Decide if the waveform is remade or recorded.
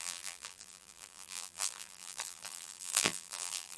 remade